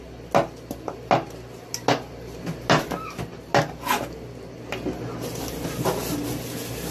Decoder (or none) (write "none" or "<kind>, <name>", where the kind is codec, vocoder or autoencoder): none